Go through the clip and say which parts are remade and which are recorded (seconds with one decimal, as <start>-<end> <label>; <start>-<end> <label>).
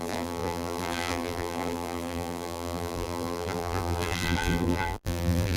0.0-5.6 remade